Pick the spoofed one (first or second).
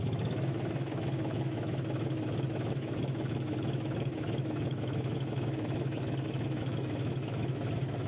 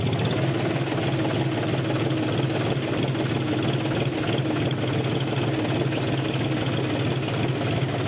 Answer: first